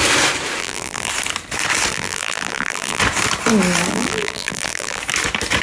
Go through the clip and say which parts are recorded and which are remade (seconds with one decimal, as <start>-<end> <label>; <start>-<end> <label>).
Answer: 0.0-0.6 recorded; 0.6-1.1 remade; 1.1-1.9 recorded; 1.9-3.0 remade; 3.0-3.9 recorded; 3.9-5.0 remade; 5.0-5.6 recorded